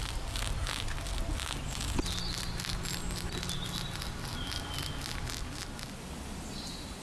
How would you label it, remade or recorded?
recorded